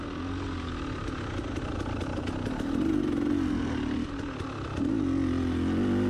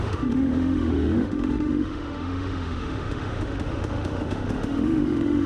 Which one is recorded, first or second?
first